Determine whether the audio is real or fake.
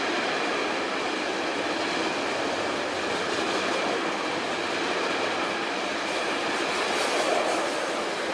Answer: real